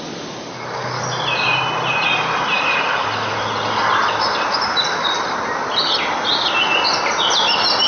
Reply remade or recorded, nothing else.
recorded